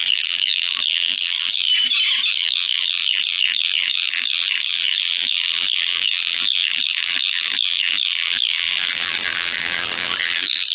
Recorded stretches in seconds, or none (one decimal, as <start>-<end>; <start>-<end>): 1.7-2.3